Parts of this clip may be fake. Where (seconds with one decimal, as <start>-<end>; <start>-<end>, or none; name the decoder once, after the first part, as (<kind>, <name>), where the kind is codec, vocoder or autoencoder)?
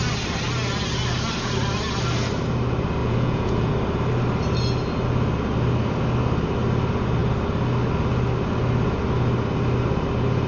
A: 3.0-3.7 (vocoder, Vocos)